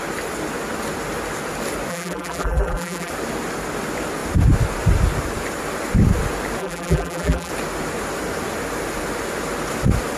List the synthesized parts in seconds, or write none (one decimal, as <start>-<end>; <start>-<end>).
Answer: 1.9-3.1; 6.6-7.5